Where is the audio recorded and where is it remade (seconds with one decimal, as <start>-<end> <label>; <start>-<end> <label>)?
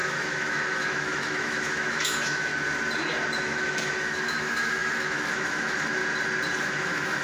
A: 0.0-2.5 remade; 2.5-3.4 recorded; 3.4-6.0 remade; 6.0-6.6 recorded; 6.6-7.2 remade